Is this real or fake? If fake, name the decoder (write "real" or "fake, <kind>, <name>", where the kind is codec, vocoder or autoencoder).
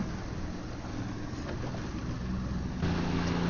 real